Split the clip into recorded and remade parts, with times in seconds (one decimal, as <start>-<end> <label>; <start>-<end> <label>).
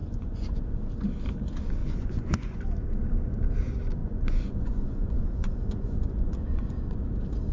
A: 0.0-0.6 remade; 0.6-1.8 recorded; 1.8-2.6 remade; 2.6-4.0 recorded; 4.0-7.0 remade; 7.0-7.5 recorded